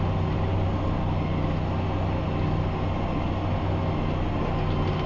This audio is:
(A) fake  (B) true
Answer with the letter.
B